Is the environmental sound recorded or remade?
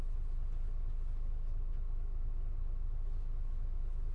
recorded